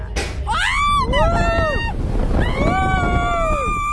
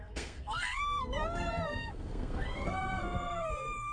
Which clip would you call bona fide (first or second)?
first